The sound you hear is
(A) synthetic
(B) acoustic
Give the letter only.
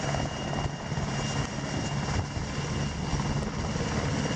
B